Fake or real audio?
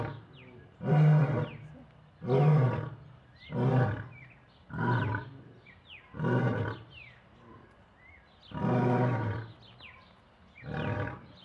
real